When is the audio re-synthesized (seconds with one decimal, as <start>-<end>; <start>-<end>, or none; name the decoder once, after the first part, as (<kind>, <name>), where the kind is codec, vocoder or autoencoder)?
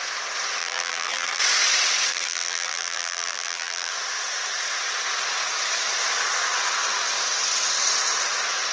0.6-1.4 (vocoder, BigVGAN v2); 2.1-3.9